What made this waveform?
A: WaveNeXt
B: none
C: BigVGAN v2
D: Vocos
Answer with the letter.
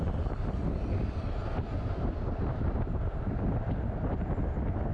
B